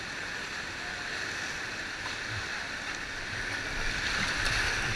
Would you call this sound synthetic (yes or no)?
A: no